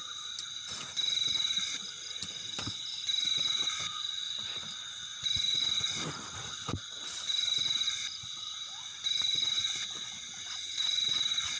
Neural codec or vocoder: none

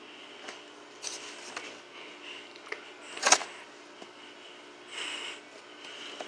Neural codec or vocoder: none